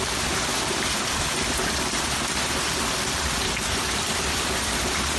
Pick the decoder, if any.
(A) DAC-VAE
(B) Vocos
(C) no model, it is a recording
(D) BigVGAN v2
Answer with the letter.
C